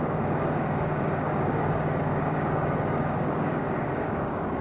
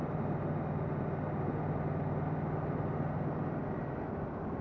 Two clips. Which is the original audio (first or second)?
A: second